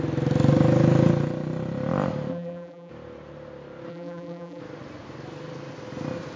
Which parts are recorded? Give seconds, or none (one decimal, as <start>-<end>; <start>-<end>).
0.0-2.3; 2.9-3.9; 4.6-6.4